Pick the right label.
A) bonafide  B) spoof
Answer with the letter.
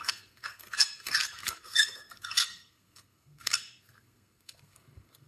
B